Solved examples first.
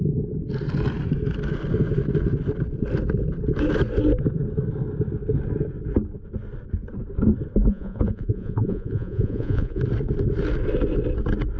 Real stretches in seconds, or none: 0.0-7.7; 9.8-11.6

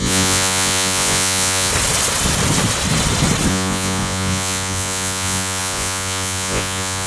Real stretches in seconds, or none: 1.7-3.5

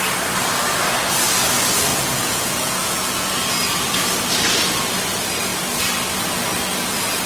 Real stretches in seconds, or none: 0.0-1.9; 3.3-7.3

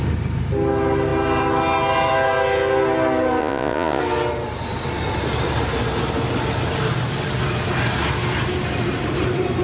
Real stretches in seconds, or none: 0.0-3.4; 4.0-9.6

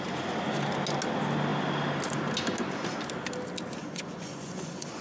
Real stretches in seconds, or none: 0.0-3.8

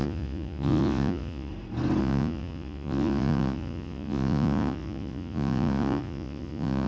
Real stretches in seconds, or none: 1.5-2.0